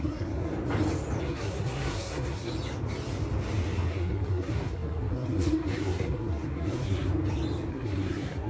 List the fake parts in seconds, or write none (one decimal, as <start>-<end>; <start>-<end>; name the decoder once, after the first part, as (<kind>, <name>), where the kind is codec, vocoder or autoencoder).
0.0-0.5 (codec, SNAC); 1.2-2.5; 3.9-7.1; 7.7-8.5